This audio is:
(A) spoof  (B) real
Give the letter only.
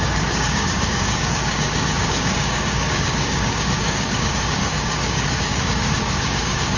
A